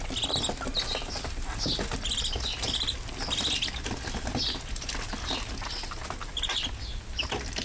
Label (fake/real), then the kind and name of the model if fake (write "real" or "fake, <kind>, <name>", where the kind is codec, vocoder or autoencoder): real